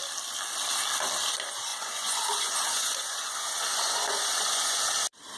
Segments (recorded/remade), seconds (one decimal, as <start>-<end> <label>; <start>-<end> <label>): 0.0-1.7 recorded; 1.7-4.9 remade; 4.9-5.4 recorded